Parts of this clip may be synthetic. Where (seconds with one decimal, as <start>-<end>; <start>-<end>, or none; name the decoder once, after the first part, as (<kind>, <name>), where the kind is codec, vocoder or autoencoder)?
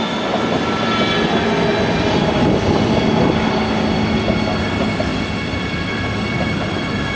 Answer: none